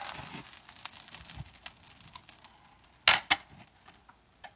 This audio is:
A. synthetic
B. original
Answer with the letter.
B